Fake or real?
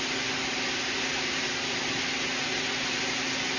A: real